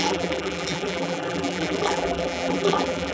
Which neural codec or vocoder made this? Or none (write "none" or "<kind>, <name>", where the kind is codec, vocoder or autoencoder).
vocoder, BigVGAN v2